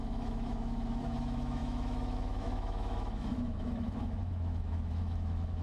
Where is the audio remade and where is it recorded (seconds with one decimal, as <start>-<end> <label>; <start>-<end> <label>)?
0.0-5.6 remade